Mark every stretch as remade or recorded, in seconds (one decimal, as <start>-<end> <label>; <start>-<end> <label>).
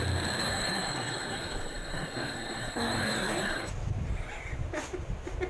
0.0-0.4 recorded; 0.4-3.7 remade; 3.7-5.5 recorded